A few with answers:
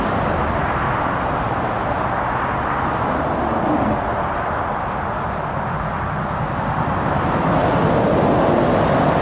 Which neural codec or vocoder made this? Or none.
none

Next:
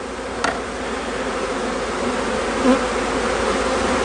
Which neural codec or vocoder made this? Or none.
none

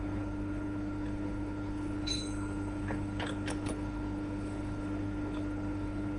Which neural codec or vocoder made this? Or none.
codec, HILCodec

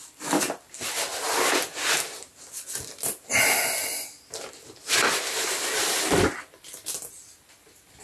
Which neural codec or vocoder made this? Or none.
none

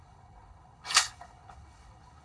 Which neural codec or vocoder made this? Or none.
codec, HILCodec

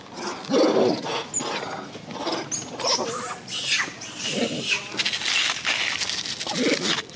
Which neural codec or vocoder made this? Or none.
none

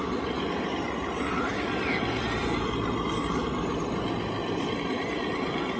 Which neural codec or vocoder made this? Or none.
none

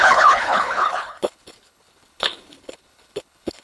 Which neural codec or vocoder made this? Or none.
codec, HILCodec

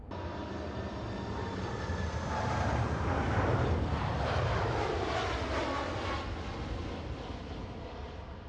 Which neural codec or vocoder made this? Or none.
none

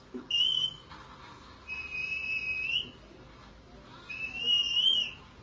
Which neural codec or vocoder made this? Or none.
none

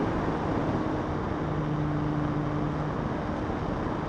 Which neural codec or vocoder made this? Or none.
none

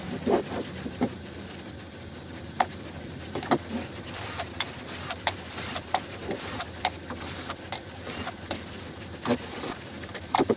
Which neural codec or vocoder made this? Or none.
none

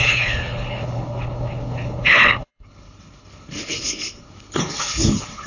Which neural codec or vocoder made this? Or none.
codec, HILCodec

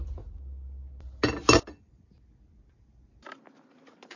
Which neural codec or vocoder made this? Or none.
none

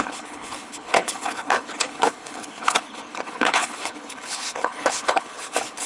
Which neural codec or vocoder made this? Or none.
codec, HILCodec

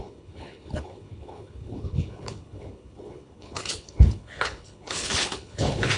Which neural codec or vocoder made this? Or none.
codec, HILCodec